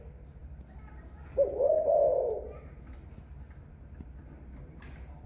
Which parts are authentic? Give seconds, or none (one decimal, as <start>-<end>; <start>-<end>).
0.0-5.3